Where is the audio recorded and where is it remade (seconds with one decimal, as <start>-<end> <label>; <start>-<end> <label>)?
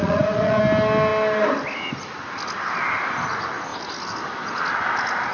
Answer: 0.0-0.6 remade; 0.6-5.3 recorded